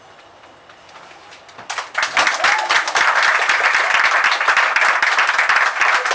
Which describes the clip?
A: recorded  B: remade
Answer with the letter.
A